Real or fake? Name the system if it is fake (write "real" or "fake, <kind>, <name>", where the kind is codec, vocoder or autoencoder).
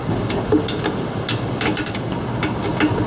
real